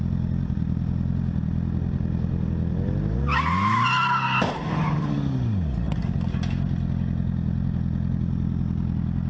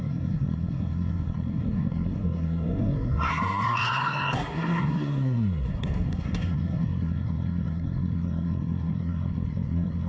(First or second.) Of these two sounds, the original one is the first